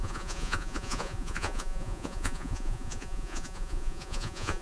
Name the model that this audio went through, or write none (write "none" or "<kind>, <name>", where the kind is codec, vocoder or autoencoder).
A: vocoder, Vocos